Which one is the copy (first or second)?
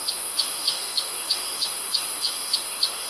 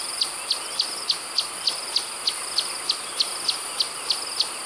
first